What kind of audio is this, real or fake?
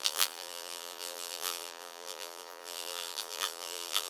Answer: fake